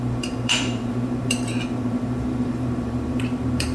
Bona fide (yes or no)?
no